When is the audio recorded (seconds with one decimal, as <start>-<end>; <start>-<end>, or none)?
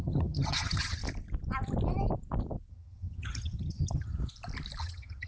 1.0-2.7; 4.2-4.8